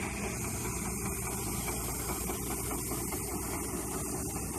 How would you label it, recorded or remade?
recorded